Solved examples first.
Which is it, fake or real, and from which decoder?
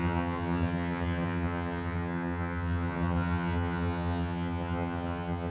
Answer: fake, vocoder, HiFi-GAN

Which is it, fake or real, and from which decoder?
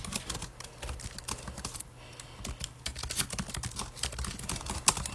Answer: real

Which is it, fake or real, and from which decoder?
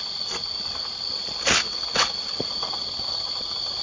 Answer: real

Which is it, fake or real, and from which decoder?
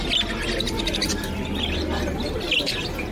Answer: real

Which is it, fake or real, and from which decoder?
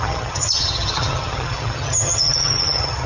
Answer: fake, vocoder, HiFi-GAN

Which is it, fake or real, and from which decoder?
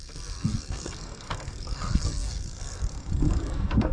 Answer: fake, codec, SNAC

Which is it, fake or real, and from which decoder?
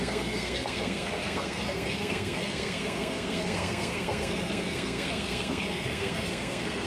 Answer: fake, codec, SNAC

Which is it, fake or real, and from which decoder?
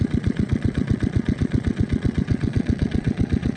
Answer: fake, vocoder, Vocos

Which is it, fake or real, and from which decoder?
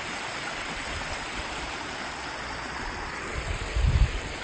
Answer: real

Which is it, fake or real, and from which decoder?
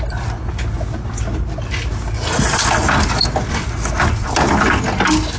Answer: real